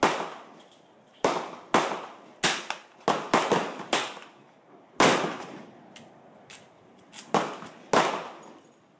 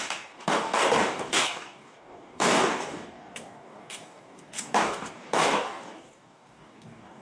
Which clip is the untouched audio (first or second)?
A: first